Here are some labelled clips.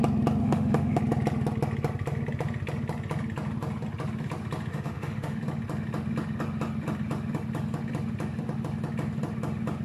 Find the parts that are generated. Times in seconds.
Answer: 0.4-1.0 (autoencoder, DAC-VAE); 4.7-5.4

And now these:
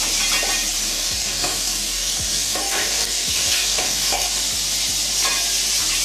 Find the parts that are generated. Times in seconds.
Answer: 0.8-4.4 (codec, DAC)

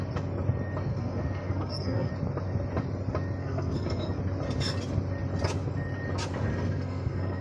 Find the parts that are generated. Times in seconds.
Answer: 0.9-2.1 (codec, SNAC); 3.4-4.2; 6.5-7.4

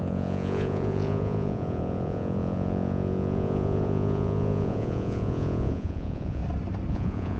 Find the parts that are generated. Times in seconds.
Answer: 0.0-6.4 (vocoder, Vocos); 6.9-7.4

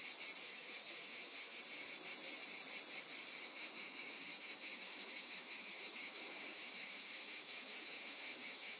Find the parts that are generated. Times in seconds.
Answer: 0.4-1.6 (autoencoder, DAC-VAE); 3.4-8.8